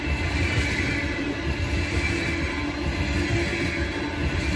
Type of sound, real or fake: real